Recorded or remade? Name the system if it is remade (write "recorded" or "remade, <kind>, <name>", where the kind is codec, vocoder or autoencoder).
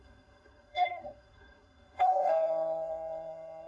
remade, codec, SNAC